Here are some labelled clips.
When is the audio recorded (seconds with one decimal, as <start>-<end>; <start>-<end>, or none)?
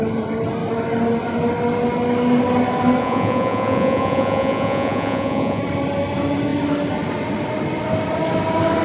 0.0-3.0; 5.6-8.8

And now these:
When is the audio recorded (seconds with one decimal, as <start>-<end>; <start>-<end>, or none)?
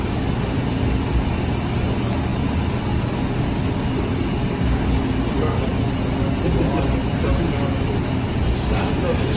0.0-9.4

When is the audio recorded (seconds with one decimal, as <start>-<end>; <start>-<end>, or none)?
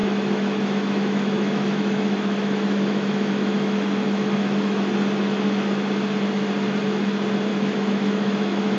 4.8-7.5